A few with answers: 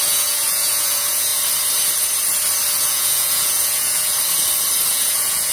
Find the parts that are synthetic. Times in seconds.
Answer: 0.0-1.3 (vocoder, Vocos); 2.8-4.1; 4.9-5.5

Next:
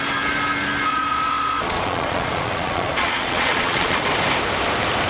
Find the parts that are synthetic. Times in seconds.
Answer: 0.9-4.0 (vocoder, Vocos)